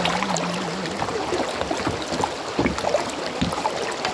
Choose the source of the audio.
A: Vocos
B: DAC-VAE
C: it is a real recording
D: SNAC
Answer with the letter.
C